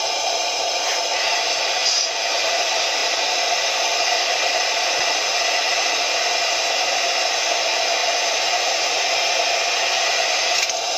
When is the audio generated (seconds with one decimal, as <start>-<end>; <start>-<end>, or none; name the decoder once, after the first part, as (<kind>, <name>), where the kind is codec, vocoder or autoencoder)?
3.0-5.0 (vocoder, BigVGAN v2)